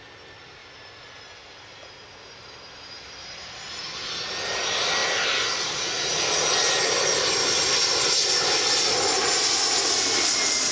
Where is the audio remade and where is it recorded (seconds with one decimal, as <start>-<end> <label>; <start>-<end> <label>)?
0.0-10.7 recorded